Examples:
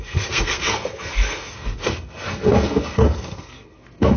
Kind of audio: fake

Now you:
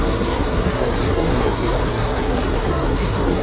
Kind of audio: fake